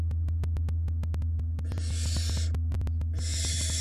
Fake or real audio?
real